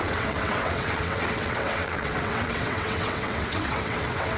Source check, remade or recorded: remade